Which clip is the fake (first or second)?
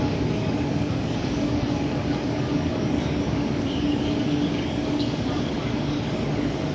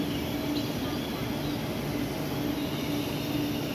first